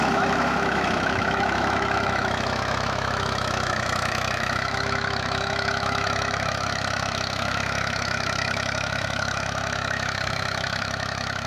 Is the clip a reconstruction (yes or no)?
yes